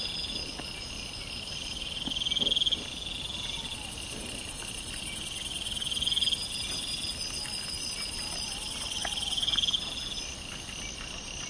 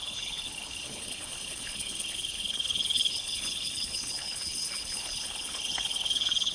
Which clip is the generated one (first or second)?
second